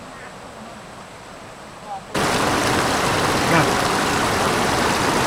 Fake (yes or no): no